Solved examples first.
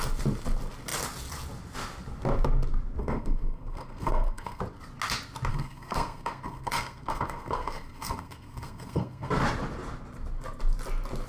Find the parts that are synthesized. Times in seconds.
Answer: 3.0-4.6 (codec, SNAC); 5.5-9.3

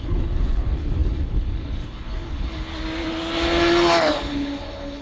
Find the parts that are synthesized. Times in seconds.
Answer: 0.0-2.7 (codec, HILCodec); 4.0-5.0

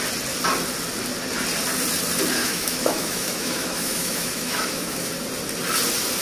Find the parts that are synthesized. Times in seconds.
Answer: 2.4-5.1 (autoencoder, DAC-VAE)